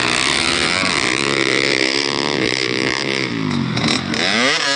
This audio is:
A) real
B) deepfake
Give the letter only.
A